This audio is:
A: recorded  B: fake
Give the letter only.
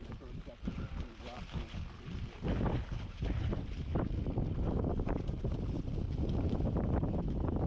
A